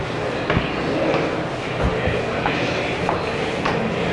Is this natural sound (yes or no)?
yes